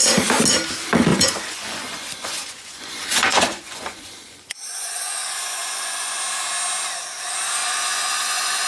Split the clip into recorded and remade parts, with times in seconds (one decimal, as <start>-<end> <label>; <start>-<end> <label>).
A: 0.0-1.1 recorded; 1.1-6.2 remade; 6.2-7.6 recorded; 7.6-8.7 remade